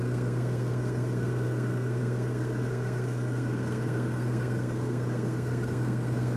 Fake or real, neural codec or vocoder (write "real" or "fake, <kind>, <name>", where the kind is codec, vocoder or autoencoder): fake, codec, SNAC